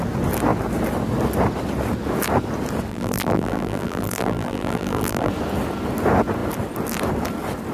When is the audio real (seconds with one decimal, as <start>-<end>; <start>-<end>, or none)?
0.0-2.9; 5.3-7.7